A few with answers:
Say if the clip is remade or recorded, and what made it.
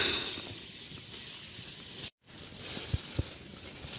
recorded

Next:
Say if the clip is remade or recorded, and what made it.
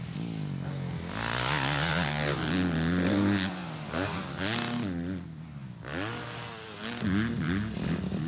recorded